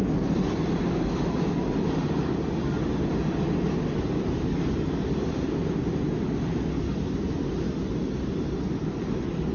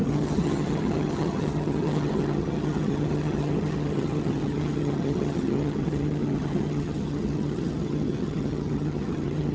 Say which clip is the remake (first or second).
second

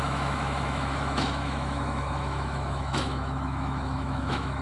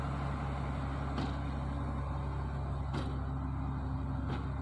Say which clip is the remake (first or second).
first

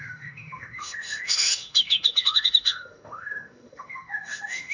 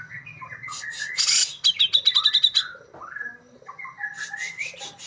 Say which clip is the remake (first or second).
first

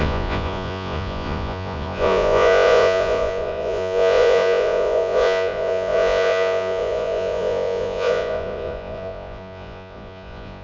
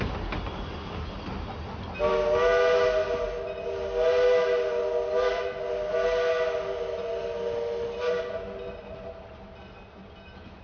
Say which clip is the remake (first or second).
first